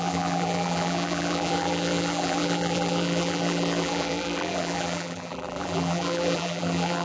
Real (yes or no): no